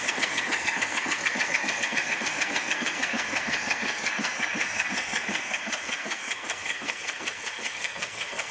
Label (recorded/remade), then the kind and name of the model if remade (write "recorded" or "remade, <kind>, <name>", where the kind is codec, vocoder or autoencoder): remade, codec, SNAC